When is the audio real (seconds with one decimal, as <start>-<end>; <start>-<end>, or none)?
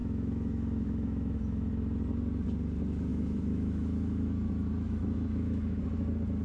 1.7-3.1; 5.8-6.4